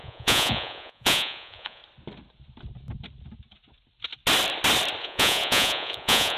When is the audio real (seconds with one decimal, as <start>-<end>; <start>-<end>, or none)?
1.8-5.0